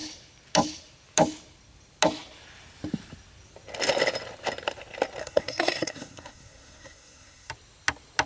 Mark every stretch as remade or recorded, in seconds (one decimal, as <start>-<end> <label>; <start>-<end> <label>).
0.0-5.2 recorded; 5.2-7.5 remade; 7.5-8.3 recorded